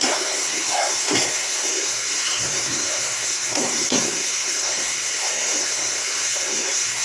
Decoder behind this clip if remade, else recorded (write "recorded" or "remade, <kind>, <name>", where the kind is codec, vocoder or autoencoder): remade, codec, SNAC